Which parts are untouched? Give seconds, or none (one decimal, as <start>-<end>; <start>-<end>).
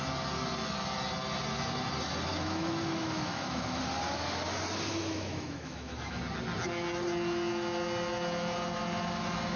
0.0-2.3; 3.8-4.9; 6.2-9.6